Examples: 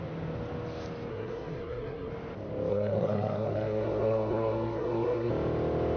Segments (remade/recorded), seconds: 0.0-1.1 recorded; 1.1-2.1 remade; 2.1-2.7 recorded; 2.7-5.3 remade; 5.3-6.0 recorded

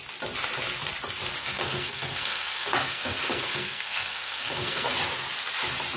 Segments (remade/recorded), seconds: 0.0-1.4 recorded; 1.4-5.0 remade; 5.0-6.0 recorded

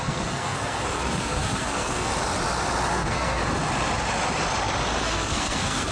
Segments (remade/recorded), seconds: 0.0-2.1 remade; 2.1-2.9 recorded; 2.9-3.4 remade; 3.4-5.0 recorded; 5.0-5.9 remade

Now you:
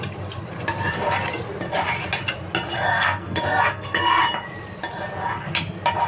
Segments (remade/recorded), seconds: 0.0-2.9 recorded; 2.9-4.2 remade; 4.2-6.1 recorded

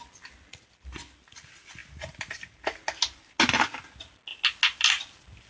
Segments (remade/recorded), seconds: 0.0-5.5 recorded